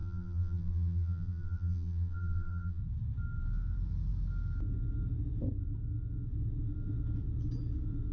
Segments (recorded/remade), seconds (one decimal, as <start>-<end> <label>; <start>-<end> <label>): 0.0-2.8 remade; 2.8-8.1 recorded